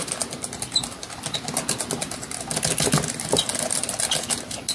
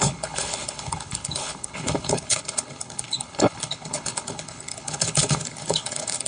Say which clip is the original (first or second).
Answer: first